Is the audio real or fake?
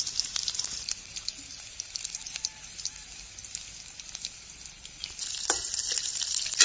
real